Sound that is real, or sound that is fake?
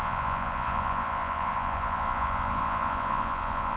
fake